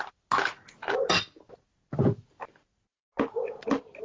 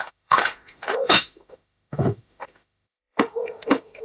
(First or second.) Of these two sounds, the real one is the first